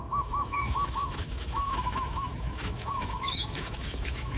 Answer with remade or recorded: remade